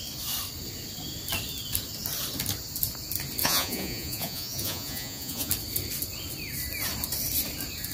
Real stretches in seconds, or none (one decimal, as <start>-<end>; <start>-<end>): 0.0-3.4; 5.5-7.9